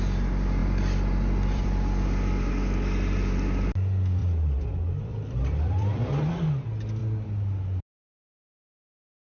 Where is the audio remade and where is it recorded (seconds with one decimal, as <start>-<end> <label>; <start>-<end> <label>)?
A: 0.0-0.6 recorded; 0.6-3.7 remade; 3.7-4.2 recorded; 4.2-6.3 remade; 6.3-9.2 recorded